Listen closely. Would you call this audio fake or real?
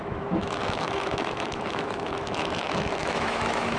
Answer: fake